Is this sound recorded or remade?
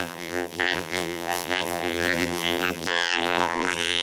remade